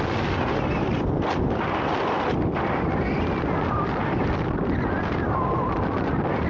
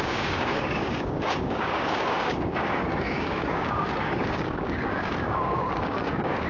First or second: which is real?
first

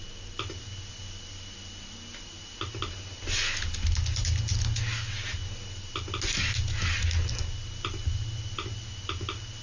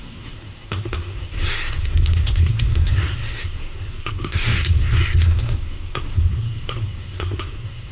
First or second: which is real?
first